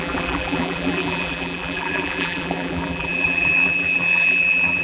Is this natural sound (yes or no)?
no